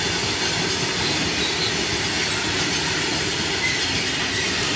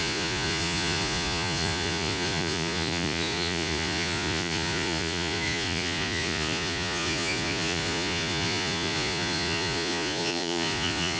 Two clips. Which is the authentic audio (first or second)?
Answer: first